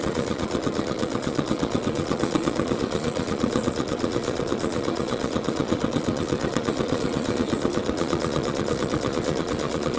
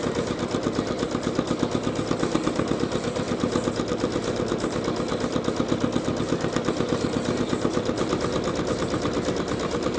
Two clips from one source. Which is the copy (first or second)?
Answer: first